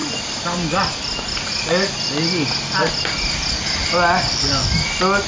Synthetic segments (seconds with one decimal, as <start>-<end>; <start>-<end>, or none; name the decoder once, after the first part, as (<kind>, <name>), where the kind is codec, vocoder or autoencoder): none